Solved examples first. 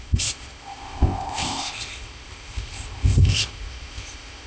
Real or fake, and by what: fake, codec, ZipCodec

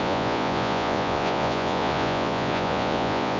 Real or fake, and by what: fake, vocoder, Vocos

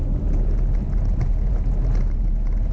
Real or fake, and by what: real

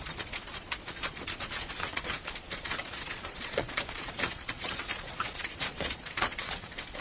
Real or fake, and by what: fake, vocoder, Vocos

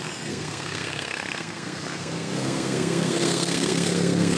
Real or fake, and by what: fake, codec, SNAC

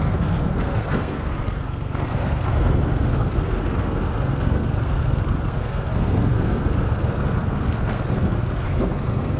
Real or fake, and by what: fake, codec, SNAC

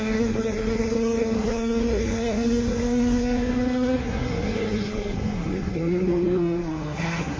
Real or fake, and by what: fake, codec, SNAC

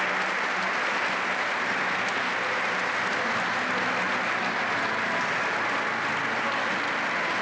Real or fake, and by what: real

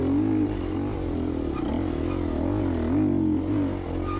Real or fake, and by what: real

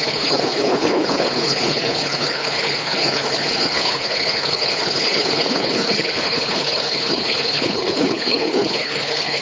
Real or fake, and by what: fake, codec, HILCodec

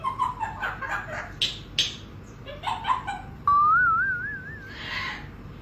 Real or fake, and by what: real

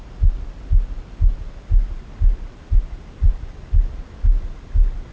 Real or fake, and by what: real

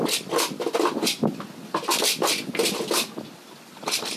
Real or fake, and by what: real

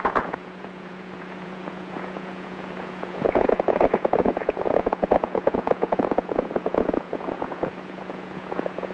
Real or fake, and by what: fake, vocoder, Vocos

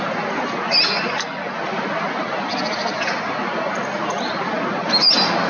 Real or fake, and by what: real